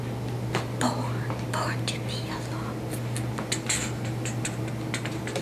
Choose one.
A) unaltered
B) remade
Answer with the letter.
A